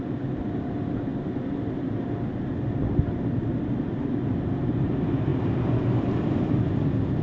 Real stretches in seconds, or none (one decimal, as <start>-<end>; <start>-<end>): 0.0-7.2